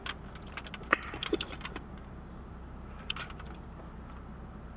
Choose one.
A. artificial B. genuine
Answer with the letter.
B